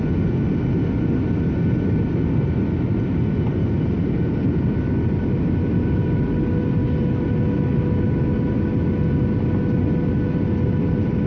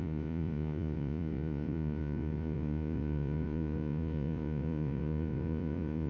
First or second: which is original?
first